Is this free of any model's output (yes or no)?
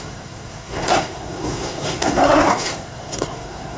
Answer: no